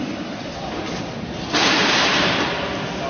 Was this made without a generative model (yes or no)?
yes